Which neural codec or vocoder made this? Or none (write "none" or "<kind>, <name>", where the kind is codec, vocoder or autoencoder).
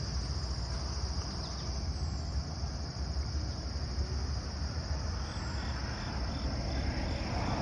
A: none